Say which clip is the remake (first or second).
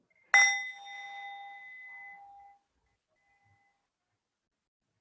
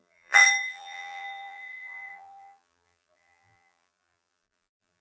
second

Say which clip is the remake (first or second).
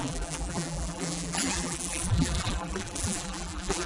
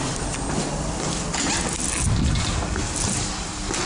first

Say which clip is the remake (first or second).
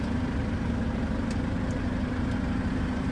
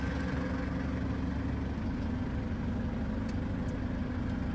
first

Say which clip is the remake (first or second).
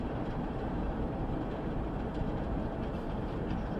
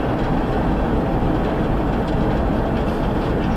first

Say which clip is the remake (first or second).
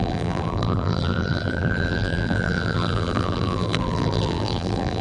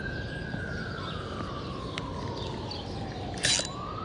first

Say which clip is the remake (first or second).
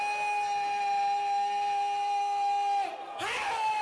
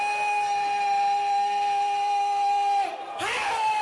second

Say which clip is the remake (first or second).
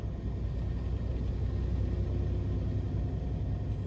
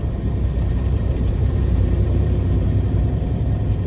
second